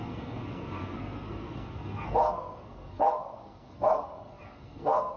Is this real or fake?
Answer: fake